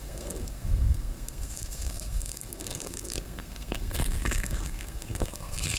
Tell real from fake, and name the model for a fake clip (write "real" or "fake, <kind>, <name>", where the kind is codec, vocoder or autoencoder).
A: fake, codec, SNAC